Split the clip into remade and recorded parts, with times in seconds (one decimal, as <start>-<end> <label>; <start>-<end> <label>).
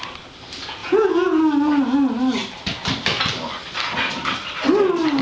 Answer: 0.0-0.8 recorded; 0.8-1.4 remade; 1.4-5.2 recorded